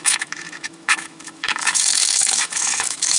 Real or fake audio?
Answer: fake